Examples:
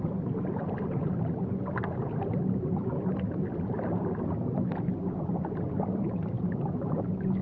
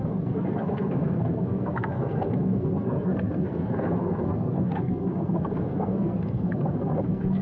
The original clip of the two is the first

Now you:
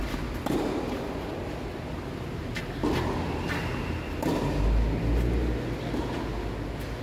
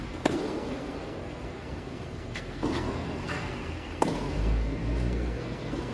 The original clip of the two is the first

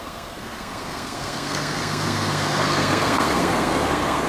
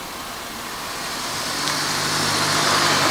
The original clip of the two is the second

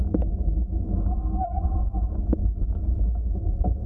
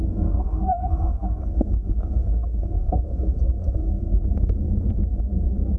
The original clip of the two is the first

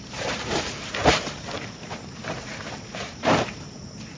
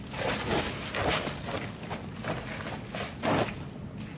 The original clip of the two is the second